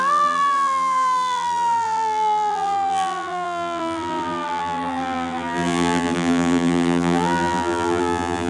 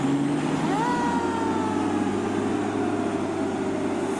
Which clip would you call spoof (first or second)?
first